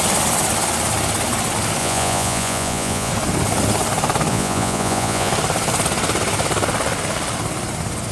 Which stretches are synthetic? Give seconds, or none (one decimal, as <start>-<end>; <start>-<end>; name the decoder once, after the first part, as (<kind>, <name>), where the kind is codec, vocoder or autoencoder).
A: 1.8-3.1 (vocoder, Vocos); 4.3-5.3